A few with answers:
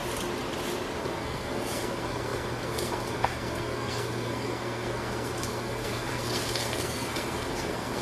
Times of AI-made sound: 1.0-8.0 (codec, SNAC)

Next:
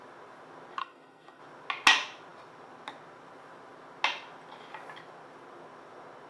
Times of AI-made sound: 0.8-1.4 (codec, SNAC)

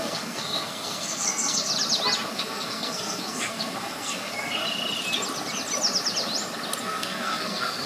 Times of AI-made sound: 0.0-1.7 (codec, SNAC); 2.3-4.6; 6.8-7.9